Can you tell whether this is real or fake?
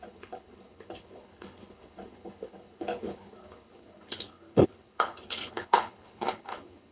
fake